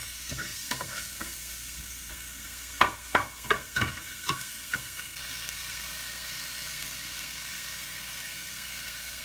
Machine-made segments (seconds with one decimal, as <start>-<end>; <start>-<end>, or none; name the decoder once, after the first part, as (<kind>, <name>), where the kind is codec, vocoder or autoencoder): 0.0-9.2 (codec, SNAC)

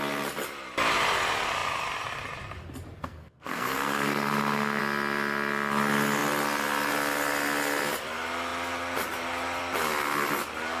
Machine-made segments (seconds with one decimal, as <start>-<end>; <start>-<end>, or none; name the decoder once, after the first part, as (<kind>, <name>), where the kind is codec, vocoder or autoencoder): 3.0-4.8 (codec, SNAC)